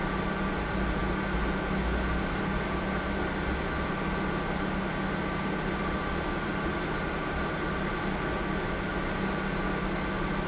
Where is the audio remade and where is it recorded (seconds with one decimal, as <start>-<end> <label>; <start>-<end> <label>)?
0.0-10.5 recorded

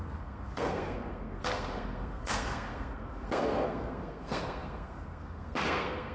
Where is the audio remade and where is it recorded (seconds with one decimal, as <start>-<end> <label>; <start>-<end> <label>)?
0.0-6.1 remade